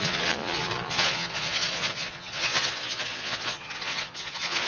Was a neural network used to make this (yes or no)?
yes